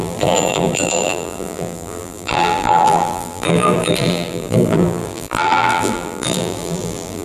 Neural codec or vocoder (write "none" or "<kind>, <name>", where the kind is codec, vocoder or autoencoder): vocoder, BigVGAN v2